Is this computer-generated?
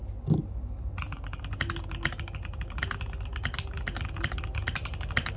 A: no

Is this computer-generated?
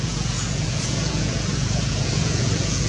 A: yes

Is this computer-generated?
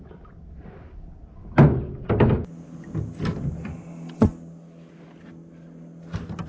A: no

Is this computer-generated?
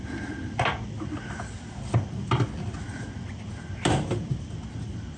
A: no